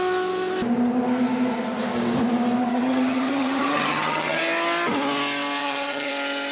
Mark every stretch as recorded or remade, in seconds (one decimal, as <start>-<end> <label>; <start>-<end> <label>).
0.0-2.6 recorded; 2.6-4.4 remade; 4.4-5.6 recorded; 5.6-6.1 remade; 6.1-6.5 recorded